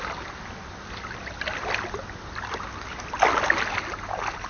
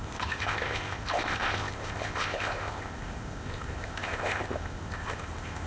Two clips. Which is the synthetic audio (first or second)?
second